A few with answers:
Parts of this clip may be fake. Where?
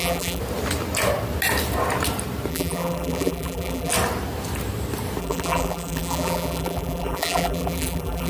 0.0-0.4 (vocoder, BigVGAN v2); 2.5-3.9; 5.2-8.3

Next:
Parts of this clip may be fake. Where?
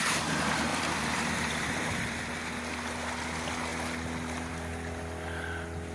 0.7-2.4 (vocoder, BigVGAN v2)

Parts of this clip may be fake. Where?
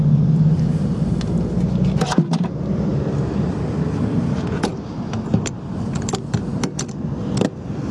0.0-6.5 (vocoder, BigVGAN v2); 7.4-7.9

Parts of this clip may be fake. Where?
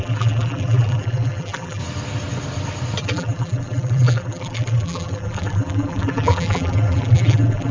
0.0-1.8 (vocoder, BigVGAN v2); 3.0-7.7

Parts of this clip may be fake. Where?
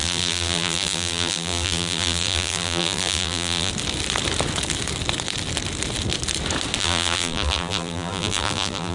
0.0-3.7 (vocoder, BigVGAN v2); 6.8-8.9